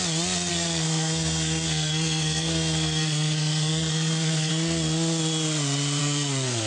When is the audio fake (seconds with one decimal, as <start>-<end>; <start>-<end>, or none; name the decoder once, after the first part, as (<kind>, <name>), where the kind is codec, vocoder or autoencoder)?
0.5-4.5 (codec, SNAC); 6.0-6.7